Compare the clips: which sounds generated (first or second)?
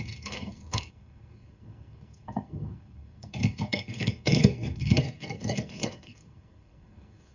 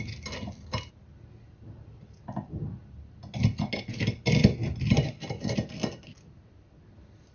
first